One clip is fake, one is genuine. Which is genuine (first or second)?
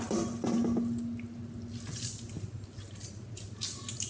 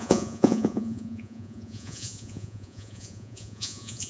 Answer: first